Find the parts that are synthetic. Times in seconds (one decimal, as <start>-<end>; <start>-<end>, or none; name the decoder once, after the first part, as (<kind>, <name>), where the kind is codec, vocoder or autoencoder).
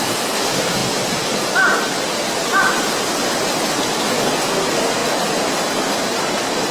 0.8-1.4 (vocoder, BigVGAN v2)